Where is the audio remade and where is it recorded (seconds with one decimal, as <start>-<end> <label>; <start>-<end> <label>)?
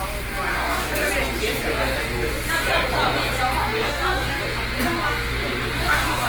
0.0-0.5 recorded; 0.5-1.1 remade; 1.1-3.6 recorded; 3.6-4.4 remade; 4.4-5.8 recorded; 5.8-6.3 remade